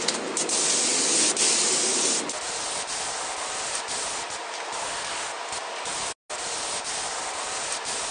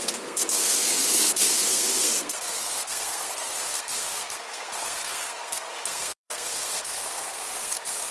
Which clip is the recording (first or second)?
first